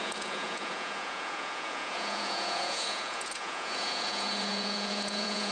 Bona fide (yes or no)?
no